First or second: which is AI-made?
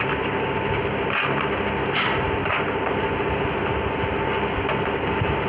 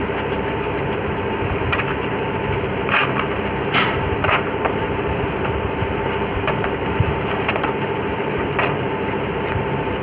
second